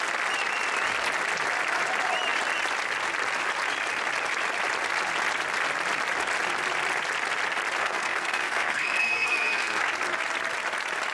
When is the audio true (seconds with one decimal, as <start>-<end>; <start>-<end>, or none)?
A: 0.0-7.8; 9.9-11.1